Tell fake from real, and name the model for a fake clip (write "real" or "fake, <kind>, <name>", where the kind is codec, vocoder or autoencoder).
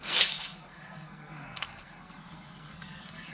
fake, codec, SNAC